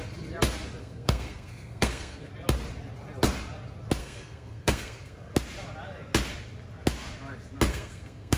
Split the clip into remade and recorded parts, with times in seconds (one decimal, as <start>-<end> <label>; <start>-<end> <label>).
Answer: 0.0-0.8 recorded; 0.8-2.3 remade; 2.3-4.0 recorded; 4.0-5.3 remade; 5.3-7.7 recorded; 7.7-8.4 remade